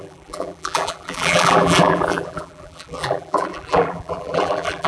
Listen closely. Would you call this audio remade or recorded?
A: remade